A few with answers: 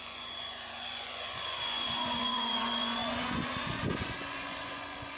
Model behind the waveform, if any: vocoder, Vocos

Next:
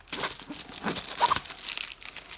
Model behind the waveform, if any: none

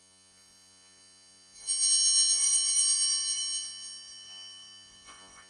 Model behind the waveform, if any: vocoder, Vocos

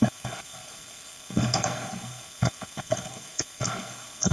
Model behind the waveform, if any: codec, SNAC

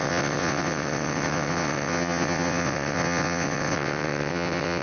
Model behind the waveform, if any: vocoder, WaveNeXt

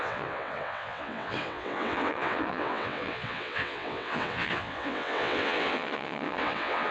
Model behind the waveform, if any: vocoder, WaveNeXt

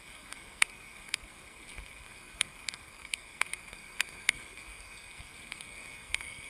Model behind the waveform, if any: codec, SNAC